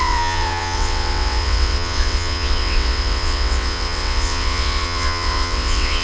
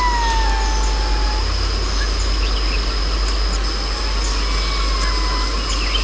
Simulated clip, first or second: first